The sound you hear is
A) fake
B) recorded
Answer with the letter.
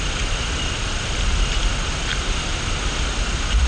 B